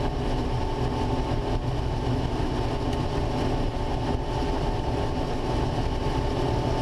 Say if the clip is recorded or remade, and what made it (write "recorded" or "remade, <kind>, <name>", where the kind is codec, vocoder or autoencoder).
recorded